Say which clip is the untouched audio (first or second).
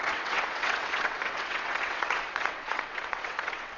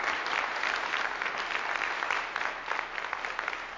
second